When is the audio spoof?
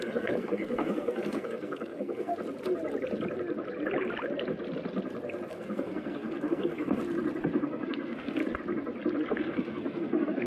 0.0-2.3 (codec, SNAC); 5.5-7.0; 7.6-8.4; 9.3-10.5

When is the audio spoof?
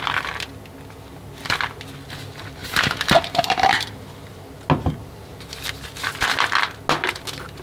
2.6-4.4 (vocoder, BigVGAN v2)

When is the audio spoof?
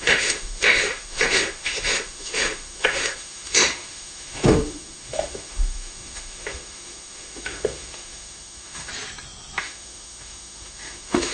0.0-8.9 (autoencoder, DAC-VAE); 9.6-11.3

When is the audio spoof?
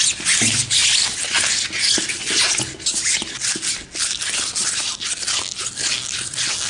none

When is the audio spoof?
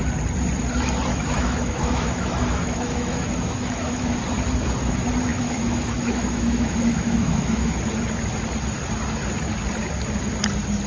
1.1-4.2 (autoencoder, DAC-VAE); 5.3-7.8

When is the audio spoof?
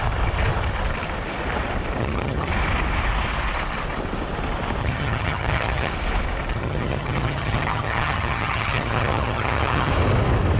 2.0-2.5 (vocoder, HiFi-GAN); 4.8-5.9; 6.5-9.9